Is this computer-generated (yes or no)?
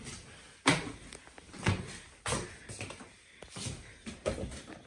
no